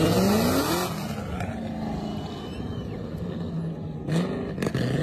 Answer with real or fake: real